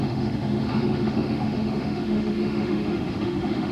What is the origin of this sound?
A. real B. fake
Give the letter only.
B